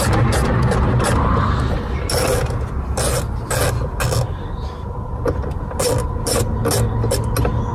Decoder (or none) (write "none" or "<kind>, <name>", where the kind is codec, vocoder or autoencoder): none